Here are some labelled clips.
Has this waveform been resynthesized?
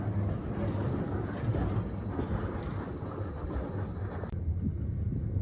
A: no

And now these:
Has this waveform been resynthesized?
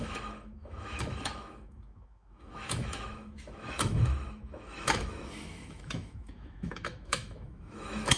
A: yes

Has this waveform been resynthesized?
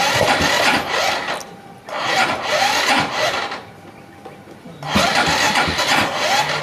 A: no